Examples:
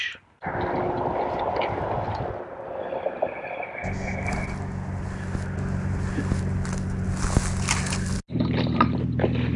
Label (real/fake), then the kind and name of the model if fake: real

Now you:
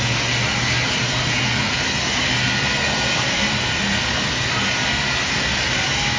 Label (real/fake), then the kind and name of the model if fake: real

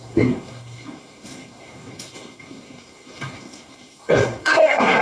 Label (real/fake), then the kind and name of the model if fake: fake, codec, SNAC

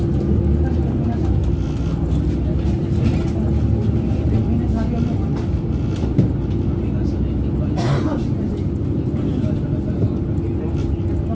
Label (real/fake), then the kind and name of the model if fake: real